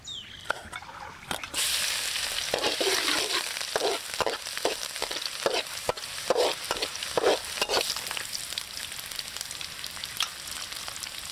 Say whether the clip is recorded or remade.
recorded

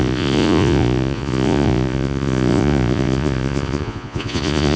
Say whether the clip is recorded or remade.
remade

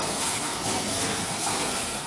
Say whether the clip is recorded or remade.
remade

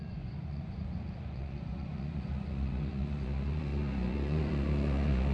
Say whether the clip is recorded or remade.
remade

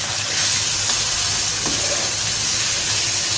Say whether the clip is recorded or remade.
recorded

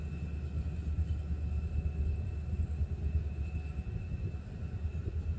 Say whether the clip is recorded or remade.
recorded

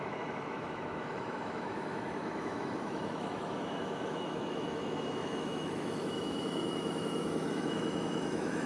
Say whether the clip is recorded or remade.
remade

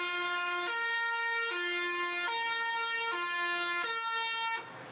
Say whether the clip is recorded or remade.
recorded